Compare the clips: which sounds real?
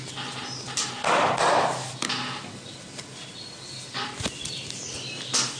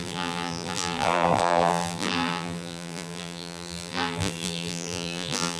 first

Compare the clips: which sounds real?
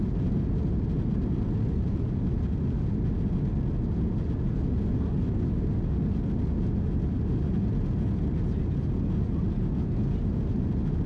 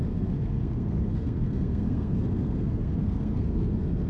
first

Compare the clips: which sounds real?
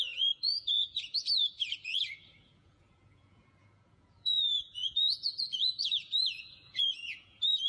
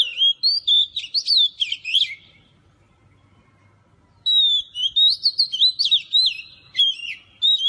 second